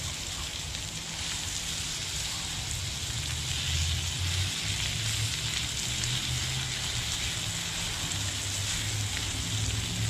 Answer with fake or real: real